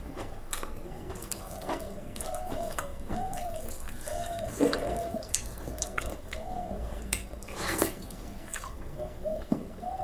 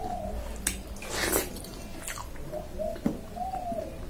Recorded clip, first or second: second